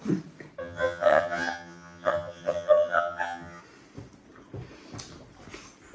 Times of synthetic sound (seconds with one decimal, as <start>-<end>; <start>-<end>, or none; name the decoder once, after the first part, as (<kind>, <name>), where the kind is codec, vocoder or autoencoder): 0.6-3.6 (vocoder, HiFi-GAN)